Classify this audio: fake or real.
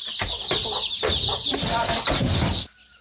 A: real